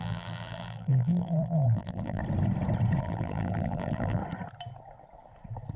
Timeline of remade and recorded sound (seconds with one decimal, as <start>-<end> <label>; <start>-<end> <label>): 0.0-2.2 remade; 2.2-3.0 recorded; 3.0-4.2 remade; 4.2-5.8 recorded